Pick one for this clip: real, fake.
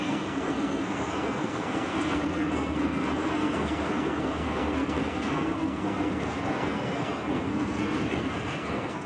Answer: fake